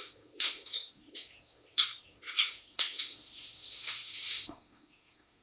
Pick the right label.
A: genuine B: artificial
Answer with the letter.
B